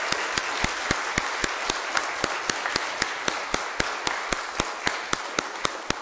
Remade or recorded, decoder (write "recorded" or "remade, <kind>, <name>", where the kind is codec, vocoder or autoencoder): recorded